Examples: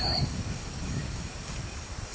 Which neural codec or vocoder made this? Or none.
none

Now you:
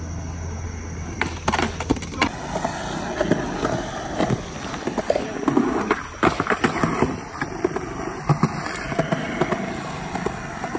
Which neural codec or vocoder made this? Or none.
none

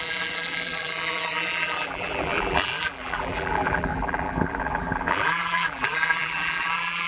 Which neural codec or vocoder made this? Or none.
vocoder, BigVGAN v2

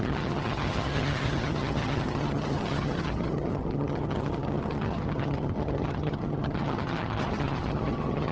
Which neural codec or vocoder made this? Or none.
vocoder, HiFi-GAN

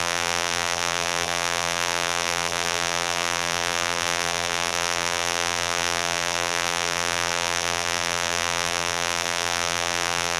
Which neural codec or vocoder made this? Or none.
vocoder, BigVGAN v2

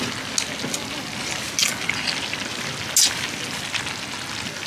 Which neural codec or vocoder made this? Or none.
none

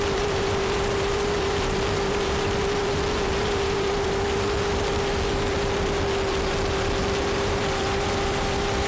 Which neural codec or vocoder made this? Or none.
vocoder, BigVGAN v2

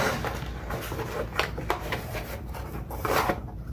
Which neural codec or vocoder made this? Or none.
vocoder, BigVGAN v2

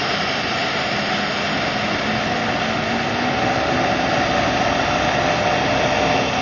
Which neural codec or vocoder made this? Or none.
none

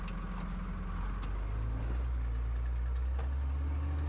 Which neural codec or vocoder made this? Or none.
none